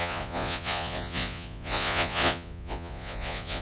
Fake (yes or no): yes